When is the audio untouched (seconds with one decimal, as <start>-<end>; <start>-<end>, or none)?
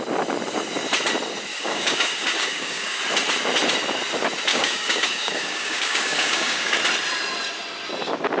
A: 0.0-1.5; 3.0-4.5; 6.8-8.4